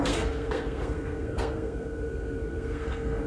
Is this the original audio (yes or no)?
no